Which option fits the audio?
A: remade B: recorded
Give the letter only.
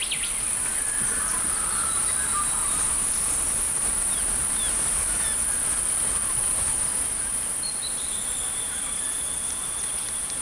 B